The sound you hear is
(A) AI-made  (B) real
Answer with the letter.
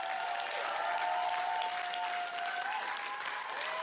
B